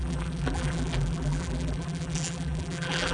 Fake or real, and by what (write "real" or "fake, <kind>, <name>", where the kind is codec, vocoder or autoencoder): fake, vocoder, BigVGAN v2